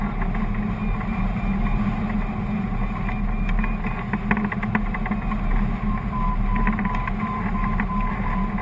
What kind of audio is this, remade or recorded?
recorded